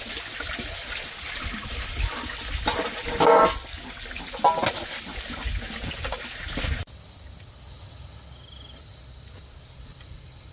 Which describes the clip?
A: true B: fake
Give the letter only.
A